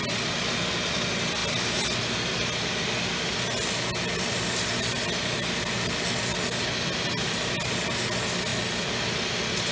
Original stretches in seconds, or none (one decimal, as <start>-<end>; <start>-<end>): 0.0-9.7